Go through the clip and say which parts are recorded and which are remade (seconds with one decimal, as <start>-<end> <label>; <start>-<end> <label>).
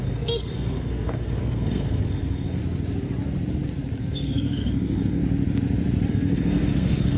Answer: 0.0-2.6 remade; 2.6-4.0 recorded; 4.0-5.2 remade; 5.2-6.1 recorded; 6.1-7.2 remade